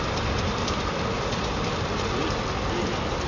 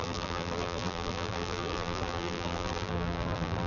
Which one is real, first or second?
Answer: first